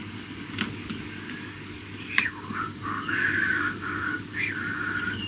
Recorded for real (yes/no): no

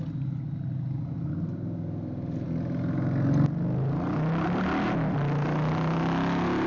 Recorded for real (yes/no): yes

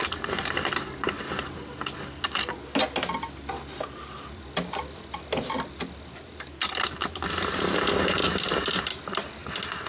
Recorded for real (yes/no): yes